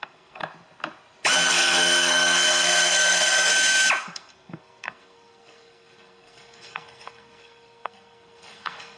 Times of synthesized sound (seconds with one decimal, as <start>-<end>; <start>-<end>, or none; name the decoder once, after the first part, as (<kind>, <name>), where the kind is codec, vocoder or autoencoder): 0.0-0.4 (codec, SNAC); 1.5-3.5; 4.0-9.0